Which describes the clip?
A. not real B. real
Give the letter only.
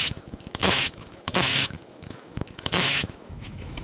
A